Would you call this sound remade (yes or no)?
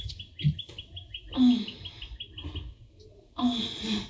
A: no